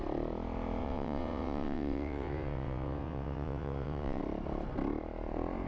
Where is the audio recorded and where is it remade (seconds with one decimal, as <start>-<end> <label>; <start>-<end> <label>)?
0.0-0.8 recorded; 0.8-4.2 remade; 4.2-5.7 recorded